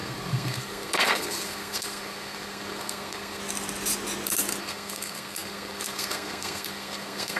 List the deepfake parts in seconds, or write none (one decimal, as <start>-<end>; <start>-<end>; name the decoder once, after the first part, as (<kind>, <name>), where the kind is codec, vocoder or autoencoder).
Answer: 0.0-3.4 (codec, SNAC); 4.6-7.4

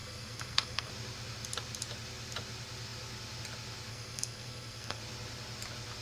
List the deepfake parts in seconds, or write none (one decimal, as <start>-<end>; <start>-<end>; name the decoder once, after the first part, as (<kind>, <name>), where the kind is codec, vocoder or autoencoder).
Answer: 0.0-0.9 (codec, SNAC); 3.9-5.0

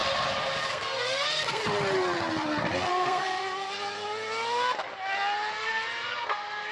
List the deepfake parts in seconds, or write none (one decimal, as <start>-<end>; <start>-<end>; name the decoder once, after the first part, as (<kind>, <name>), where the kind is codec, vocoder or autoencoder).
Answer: 0.7-1.6 (codec, SNAC); 2.9-3.4; 5.5-6.7

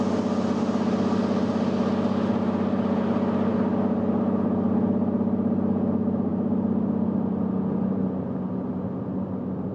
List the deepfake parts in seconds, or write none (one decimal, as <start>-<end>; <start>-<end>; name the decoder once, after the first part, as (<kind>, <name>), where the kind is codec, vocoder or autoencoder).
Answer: none

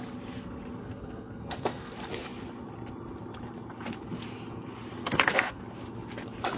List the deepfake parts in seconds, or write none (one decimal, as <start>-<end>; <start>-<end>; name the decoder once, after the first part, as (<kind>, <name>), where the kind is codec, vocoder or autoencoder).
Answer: 0.8-1.9 (codec, SNAC); 5.0-5.6

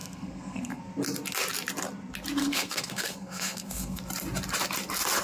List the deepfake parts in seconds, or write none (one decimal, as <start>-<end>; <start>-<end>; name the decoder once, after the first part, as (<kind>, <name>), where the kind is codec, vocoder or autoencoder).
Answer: 0.0-0.8 (codec, SNAC); 2.4-4.0